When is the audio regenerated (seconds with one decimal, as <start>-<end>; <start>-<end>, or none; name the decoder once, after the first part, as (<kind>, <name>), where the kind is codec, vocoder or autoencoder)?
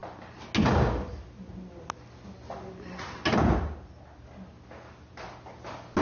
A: none